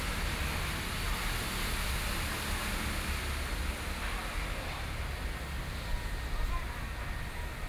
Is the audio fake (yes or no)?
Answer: no